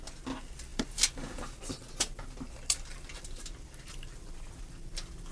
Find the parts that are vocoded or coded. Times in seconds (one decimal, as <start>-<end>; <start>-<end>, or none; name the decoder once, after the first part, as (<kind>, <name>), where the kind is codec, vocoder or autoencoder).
none